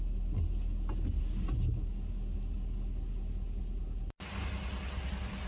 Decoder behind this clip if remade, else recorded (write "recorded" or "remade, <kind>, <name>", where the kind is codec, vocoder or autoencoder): recorded